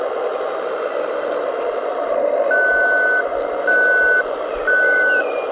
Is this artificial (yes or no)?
no